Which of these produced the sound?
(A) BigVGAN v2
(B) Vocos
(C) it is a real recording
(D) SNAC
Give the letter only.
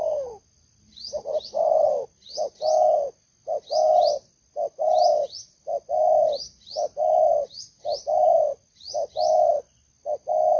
C